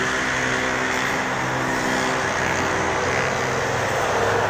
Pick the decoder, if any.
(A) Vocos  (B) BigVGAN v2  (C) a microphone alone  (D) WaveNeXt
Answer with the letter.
C